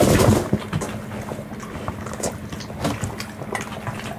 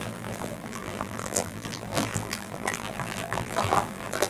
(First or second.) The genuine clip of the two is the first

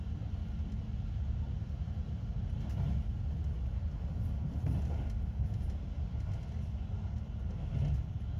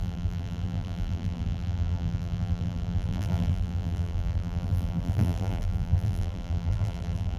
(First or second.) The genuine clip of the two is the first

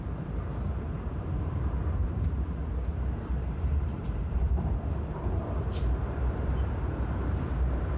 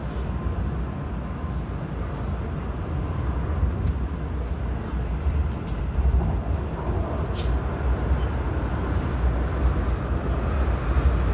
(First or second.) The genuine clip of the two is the second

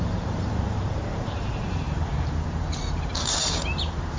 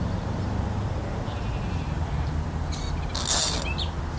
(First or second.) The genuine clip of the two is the second